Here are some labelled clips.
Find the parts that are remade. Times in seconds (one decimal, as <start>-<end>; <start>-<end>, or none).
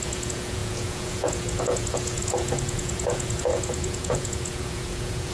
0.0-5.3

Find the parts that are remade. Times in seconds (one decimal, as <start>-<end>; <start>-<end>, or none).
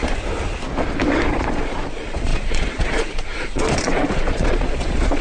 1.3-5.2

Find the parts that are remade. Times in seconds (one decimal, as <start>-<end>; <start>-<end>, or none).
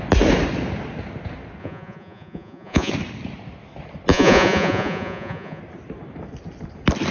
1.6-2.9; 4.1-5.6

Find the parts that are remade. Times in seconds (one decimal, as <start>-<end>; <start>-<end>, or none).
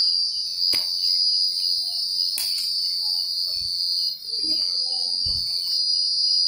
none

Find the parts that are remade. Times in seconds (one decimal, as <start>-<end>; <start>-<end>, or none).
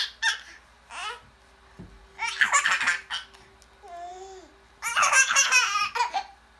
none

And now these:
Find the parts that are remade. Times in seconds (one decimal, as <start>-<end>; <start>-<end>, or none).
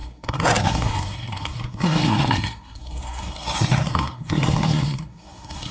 0.0-5.7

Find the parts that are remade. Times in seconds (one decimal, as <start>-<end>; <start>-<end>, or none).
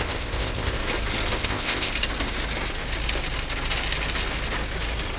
0.0-0.8; 1.4-1.9